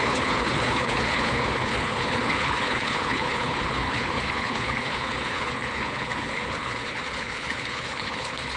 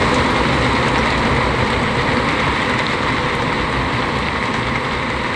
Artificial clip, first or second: first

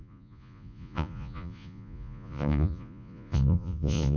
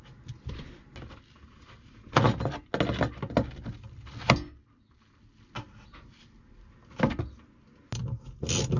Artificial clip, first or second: first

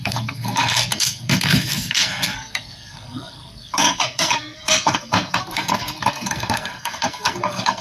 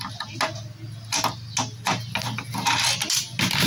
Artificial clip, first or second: first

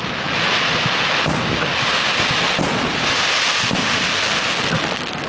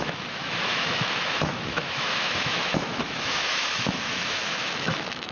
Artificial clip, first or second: second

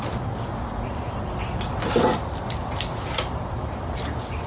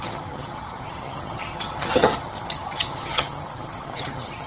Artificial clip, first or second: second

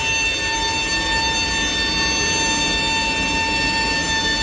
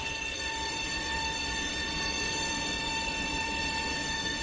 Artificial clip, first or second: second